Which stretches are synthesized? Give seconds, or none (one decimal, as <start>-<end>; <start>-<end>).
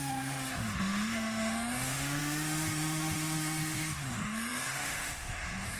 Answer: 0.0-5.8